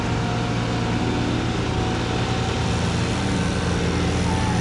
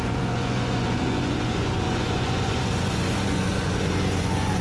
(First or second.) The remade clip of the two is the second